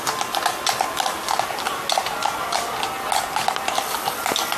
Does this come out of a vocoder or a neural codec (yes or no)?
no